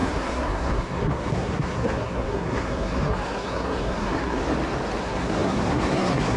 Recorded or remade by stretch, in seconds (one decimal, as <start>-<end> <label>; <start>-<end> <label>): 0.0-4.4 remade; 4.4-5.0 recorded; 5.0-6.4 remade